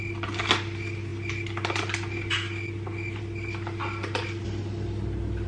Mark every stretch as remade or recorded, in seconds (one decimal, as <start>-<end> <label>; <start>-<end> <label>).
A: 0.0-5.5 recorded